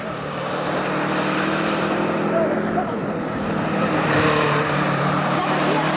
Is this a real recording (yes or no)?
no